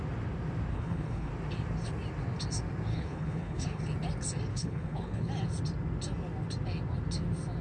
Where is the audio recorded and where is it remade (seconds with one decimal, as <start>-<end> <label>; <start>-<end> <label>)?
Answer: 0.0-0.7 recorded; 0.7-1.3 remade; 1.3-2.9 recorded; 2.9-3.8 remade; 3.8-4.5 recorded; 4.5-5.3 remade; 5.3-7.6 recorded